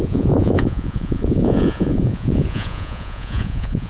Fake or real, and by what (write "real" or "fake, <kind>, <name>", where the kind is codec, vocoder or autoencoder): fake, vocoder, Vocos